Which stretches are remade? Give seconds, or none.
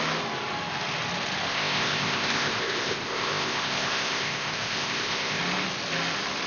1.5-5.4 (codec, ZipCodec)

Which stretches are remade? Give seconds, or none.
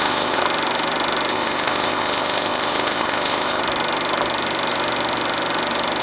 0.0-0.4 (codec, ZipCodec); 1.3-3.6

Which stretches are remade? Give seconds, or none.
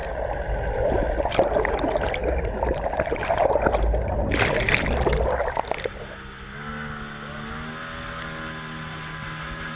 none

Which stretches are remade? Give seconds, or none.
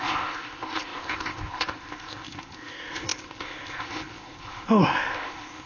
0.0-5.7 (codec, ZipCodec)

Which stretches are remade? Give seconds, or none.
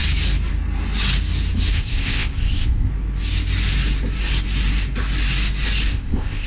1.7-2.9 (codec, ZipCodec); 5.9-6.5